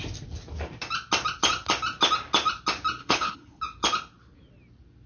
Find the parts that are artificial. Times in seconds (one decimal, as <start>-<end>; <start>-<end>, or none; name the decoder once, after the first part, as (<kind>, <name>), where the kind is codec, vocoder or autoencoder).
3.0-3.6 (codec, HILCodec)